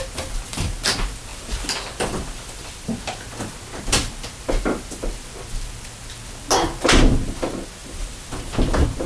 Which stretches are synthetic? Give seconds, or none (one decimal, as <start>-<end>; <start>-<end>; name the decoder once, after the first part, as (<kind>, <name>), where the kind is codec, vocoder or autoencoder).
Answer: 1.3-3.5 (vocoder, BigVGAN v2); 7.8-8.4